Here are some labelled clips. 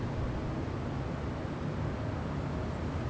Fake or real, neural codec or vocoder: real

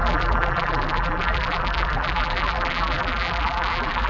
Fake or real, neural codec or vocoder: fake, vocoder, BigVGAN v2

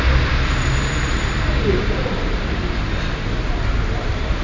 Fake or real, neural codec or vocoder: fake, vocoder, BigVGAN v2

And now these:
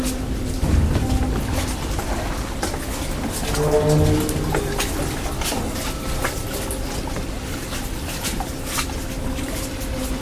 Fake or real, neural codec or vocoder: real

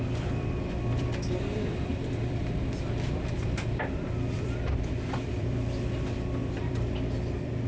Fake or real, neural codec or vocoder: fake, vocoder, BigVGAN v2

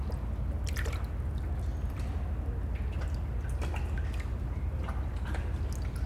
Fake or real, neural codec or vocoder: real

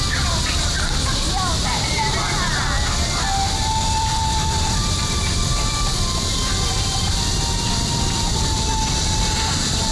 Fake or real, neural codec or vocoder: fake, vocoder, BigVGAN v2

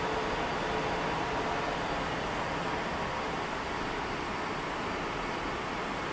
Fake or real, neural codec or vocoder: real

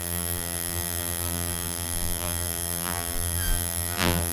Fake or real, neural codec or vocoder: fake, vocoder, BigVGAN v2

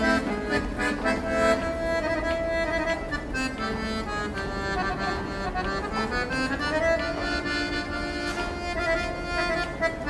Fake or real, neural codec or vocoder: real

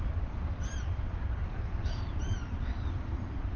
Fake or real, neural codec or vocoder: fake, vocoder, BigVGAN v2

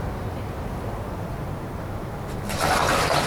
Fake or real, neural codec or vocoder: fake, vocoder, BigVGAN v2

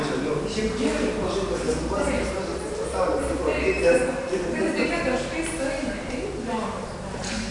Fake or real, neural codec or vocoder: fake, vocoder, BigVGAN v2